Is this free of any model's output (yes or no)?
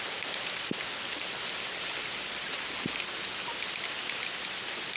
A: yes